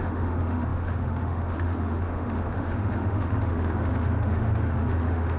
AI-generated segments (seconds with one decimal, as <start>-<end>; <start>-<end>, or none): 0.0-5.4